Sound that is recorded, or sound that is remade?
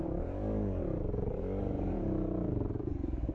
remade